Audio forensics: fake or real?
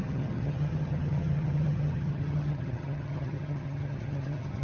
fake